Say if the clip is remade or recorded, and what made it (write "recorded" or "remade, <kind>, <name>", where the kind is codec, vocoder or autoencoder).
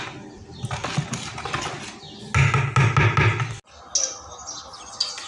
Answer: recorded